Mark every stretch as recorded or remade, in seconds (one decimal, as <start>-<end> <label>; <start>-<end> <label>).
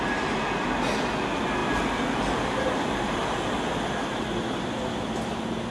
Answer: 0.0-5.7 recorded